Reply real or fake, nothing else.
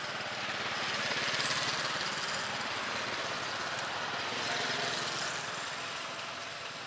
real